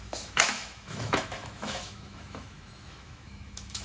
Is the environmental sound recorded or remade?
remade